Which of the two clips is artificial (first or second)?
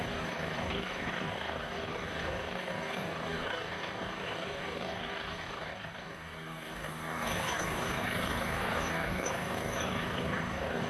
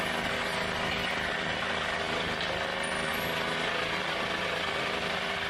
first